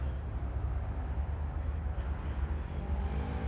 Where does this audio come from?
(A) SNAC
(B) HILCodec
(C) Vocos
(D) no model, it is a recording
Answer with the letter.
D